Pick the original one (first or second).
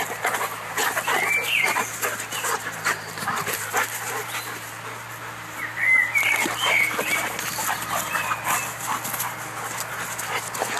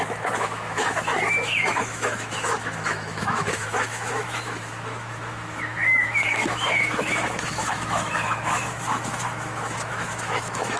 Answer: first